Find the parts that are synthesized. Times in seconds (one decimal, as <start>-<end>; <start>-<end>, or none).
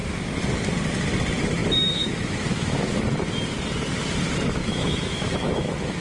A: 1.6-2.9; 4.6-6.0